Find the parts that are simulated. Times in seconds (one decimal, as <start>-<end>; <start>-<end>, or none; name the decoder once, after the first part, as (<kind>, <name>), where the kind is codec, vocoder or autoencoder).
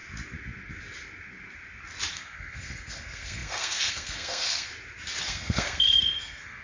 2.1-4.7 (codec, SNAC); 5.2-6.6